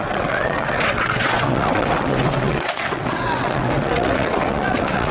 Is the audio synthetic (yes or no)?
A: yes